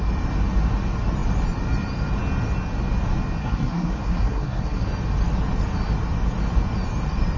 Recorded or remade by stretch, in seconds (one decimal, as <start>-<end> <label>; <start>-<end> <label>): 0.0-3.4 recorded; 3.4-4.8 remade; 4.8-7.4 recorded